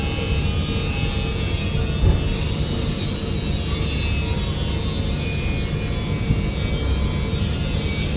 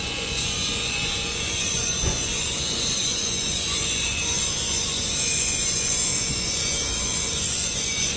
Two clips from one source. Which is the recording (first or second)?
first